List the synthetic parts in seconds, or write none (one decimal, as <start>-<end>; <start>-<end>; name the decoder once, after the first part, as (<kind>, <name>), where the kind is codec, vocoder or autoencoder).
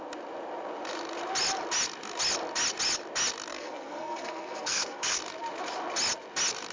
3.5-5.2 (codec, SNAC)